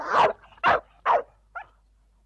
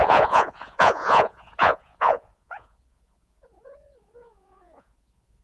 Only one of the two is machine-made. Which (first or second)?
second